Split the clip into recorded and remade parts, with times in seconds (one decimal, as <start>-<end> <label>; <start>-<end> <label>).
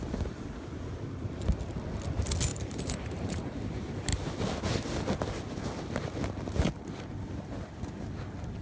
0.0-2.5 recorded; 2.5-3.4 remade; 3.4-8.6 recorded